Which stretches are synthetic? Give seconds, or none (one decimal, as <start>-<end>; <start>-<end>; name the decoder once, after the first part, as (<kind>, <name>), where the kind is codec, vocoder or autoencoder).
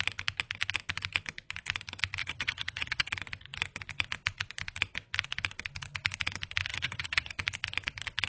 2.2-3.1 (vocoder, HiFi-GAN); 6.7-7.3